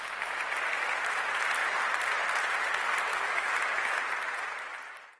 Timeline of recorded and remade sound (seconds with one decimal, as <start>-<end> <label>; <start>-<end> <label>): 0.0-3.1 recorded; 3.1-4.0 remade; 4.0-5.2 recorded